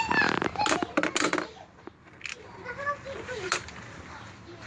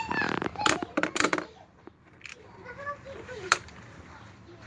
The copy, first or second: second